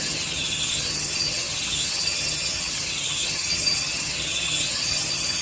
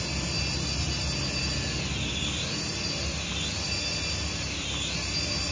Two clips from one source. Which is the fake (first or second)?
first